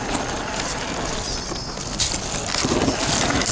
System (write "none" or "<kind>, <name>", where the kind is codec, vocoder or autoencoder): none